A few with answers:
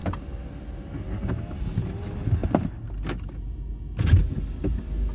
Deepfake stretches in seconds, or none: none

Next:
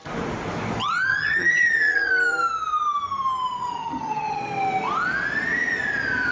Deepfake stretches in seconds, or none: 1.1-2.1; 3.6-4.4

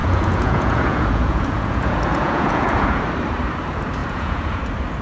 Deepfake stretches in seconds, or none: 0.0-3.0; 4.0-4.6

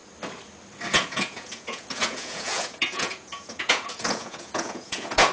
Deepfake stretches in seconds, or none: 0.9-5.3

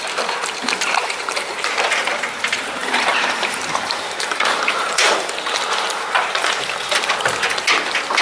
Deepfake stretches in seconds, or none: 1.0-1.7; 2.8-7.1

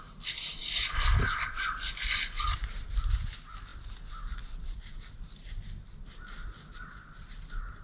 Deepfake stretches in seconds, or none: none